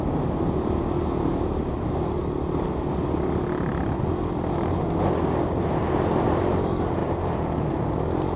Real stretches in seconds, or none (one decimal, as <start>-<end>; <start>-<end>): 0.0-8.4